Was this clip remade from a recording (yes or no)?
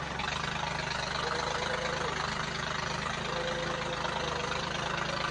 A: no